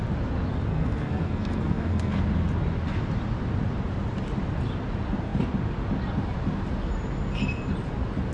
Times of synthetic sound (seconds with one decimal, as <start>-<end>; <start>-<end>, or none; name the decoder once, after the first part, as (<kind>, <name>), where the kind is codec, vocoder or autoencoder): 0.7-2.2 (codec, SNAC)